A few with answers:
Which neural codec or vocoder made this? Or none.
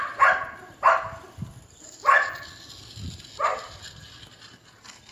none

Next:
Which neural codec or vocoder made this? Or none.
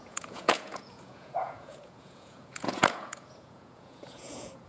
vocoder, Vocos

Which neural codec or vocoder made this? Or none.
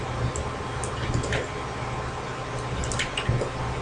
none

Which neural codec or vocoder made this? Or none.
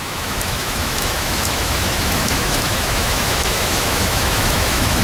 autoencoder, DAC-VAE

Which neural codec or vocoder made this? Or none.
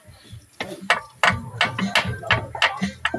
none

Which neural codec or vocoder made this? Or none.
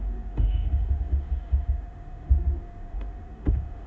autoencoder, DAC-VAE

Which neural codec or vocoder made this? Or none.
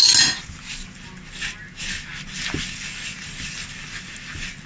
none